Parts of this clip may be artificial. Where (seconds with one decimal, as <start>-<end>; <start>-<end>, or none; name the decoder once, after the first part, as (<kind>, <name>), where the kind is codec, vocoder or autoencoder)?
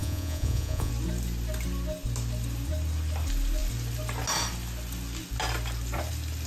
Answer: 0.0-0.9 (vocoder, Vocos)